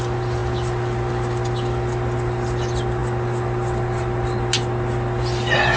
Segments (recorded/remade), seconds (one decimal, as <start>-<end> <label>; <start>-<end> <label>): 0.0-5.8 recorded